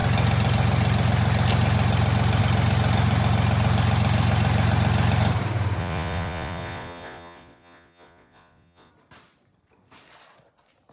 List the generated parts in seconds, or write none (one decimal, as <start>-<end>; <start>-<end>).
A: 5.8-8.9